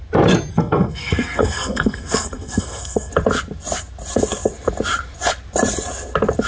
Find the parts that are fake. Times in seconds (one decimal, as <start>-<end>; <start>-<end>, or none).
0.5-3.1